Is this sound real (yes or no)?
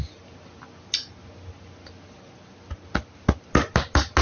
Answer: yes